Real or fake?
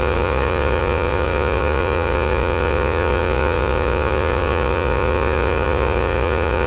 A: fake